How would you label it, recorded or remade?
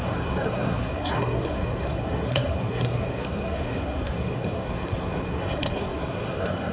remade